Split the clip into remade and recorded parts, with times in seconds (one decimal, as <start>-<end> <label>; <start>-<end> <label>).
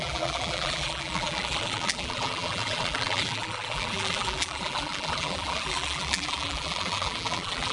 0.0-7.7 remade